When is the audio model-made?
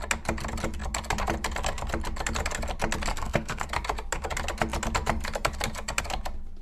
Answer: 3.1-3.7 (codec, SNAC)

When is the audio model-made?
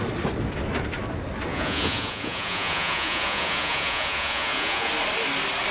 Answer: 1.5-4.9 (vocoder, Vocos)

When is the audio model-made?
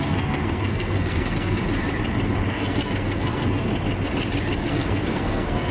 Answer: 0.0-1.6 (codec, SNAC); 2.5-3.7; 4.7-5.7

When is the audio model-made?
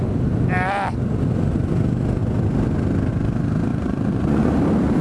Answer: 3.7-4.6 (vocoder, Vocos)